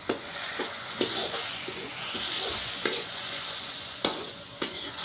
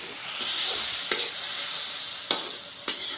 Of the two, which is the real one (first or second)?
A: second